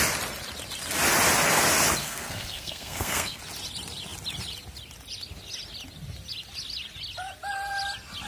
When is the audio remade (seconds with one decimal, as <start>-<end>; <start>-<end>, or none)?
2.0-3.4